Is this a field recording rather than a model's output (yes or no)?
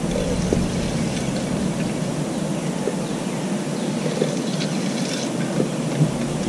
yes